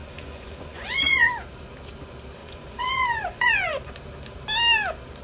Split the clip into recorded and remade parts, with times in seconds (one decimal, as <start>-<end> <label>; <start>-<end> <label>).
0.0-1.3 remade; 1.3-2.4 recorded; 2.4-3.9 remade; 3.9-5.2 recorded